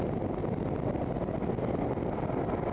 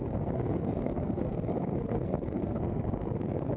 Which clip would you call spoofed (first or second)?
second